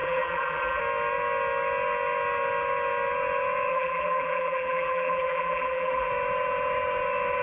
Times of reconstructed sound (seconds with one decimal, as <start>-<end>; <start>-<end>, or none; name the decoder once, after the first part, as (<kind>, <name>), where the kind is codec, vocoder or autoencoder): 0.0-0.8 (vocoder, BigVGAN v2); 3.7-6.1